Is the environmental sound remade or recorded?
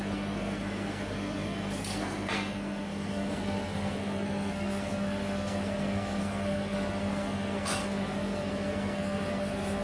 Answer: remade